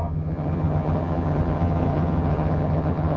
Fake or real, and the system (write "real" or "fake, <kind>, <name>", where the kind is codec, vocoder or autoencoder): fake, vocoder, HiFi-GAN